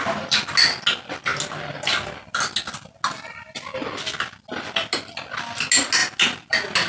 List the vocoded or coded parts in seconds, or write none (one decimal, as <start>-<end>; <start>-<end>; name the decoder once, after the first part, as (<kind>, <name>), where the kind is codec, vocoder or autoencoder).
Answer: none